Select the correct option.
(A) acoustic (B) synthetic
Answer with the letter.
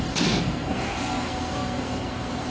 B